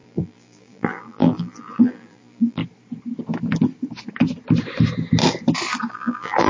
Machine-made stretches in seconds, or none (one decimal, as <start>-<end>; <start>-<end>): 0.0-2.6; 5.9-6.5